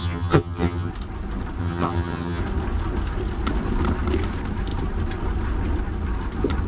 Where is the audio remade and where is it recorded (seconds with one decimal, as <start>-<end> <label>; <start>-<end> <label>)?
0.0-0.9 remade; 0.9-1.6 recorded; 1.6-2.4 remade; 2.4-6.7 recorded